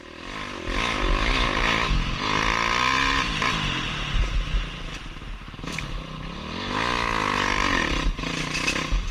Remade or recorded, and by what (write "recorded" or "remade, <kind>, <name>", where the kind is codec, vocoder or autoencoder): recorded